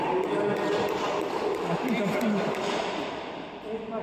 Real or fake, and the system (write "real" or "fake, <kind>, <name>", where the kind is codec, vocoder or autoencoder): real